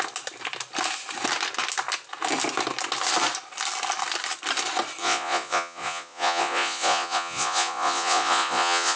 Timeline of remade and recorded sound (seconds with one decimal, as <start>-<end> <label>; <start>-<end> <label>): 0.0-5.0 recorded; 5.0-9.0 remade